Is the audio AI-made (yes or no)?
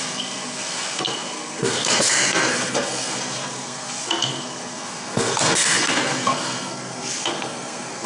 yes